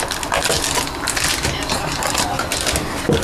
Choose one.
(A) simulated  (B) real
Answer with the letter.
B